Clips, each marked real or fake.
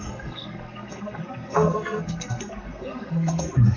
fake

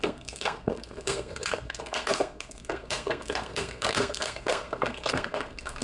fake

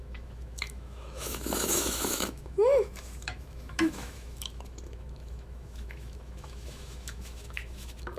fake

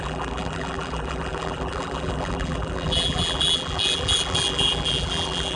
fake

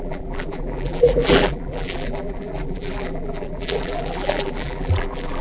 fake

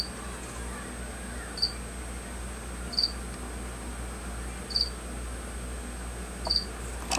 real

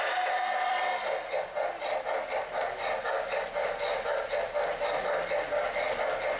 real